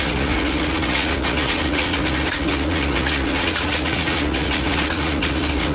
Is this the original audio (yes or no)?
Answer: no